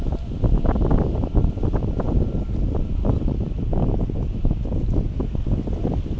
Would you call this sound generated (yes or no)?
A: no